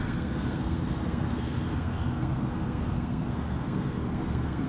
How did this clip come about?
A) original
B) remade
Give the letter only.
B